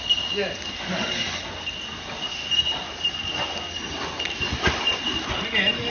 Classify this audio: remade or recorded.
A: recorded